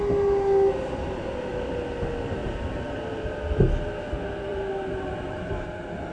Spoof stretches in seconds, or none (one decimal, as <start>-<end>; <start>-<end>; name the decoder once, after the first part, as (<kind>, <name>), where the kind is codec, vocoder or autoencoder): 4.5-5.6 (vocoder, BigVGAN v2)